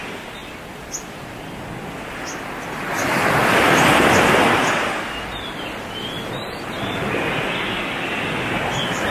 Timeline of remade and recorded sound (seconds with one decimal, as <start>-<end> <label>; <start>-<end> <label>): 0.0-9.1 recorded